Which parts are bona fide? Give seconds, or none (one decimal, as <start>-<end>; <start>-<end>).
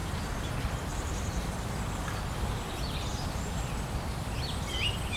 0.5-0.9; 2.2-3.1; 3.7-5.2